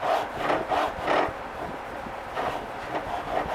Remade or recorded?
recorded